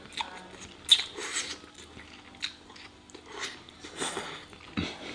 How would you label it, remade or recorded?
recorded